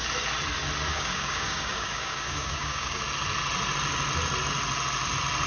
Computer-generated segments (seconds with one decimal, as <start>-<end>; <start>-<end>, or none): 0.9-3.0